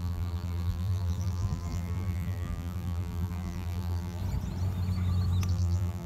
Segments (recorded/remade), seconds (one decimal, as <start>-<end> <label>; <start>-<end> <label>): 0.0-4.2 remade; 4.2-5.5 recorded; 5.5-6.1 remade